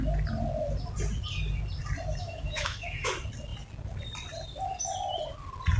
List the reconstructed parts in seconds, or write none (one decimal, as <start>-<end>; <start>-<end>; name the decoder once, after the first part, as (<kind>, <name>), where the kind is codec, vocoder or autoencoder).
2.2-3.1 (autoencoder, DAC-VAE)